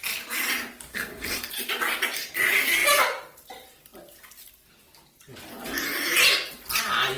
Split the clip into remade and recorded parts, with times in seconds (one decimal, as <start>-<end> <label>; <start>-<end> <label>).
0.0-0.9 recorded; 0.9-1.5 remade; 1.5-7.2 recorded